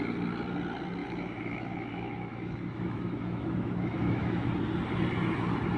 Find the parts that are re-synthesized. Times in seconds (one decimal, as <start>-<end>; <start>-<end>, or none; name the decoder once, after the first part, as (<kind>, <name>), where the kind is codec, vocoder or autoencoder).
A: 1.0-4.5 (autoencoder, DAC-VAE)